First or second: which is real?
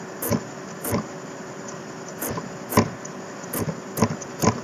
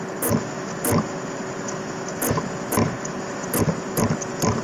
second